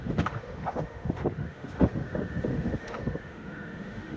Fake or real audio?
fake